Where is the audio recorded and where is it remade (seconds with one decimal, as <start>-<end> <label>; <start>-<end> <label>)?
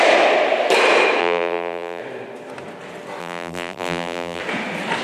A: 0.0-1.2 recorded; 1.2-2.0 remade; 2.0-3.2 recorded; 3.2-4.4 remade; 4.4-5.0 recorded